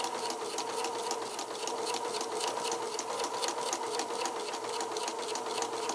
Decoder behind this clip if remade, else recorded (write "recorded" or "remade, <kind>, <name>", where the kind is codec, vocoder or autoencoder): recorded